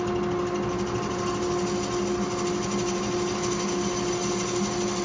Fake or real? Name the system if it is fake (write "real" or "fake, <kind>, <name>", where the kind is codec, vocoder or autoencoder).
real